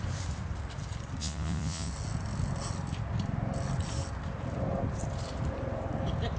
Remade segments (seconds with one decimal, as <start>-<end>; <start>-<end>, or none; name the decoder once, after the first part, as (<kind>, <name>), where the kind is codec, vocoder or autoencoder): 1.2-1.9 (vocoder, Vocos)